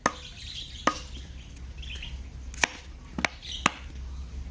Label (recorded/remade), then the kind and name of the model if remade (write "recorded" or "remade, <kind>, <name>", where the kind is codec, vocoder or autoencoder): recorded